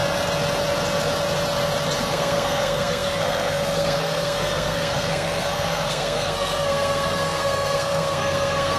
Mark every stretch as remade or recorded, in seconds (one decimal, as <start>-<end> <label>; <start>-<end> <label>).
0.0-2.0 recorded; 2.0-8.8 remade